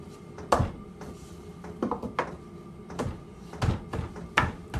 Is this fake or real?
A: real